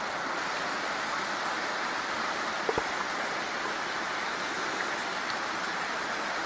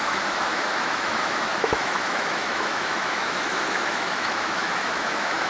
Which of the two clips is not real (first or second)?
second